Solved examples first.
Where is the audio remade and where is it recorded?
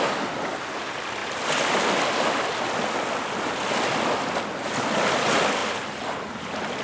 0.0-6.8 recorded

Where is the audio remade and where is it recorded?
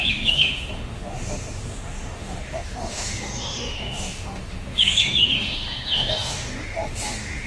0.0-7.5 remade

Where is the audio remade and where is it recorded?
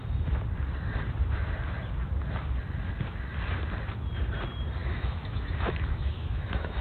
0.0-4.8 recorded; 4.8-6.8 remade